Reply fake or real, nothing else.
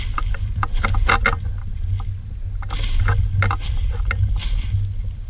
real